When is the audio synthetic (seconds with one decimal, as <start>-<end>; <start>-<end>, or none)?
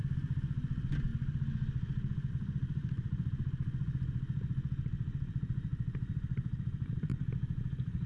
0.0-1.1; 2.3-2.8; 5.3-7.1